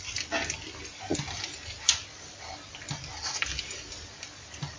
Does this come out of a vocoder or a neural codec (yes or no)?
no